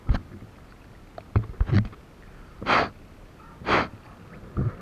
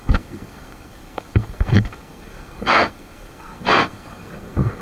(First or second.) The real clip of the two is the first